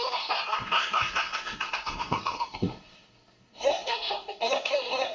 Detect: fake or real fake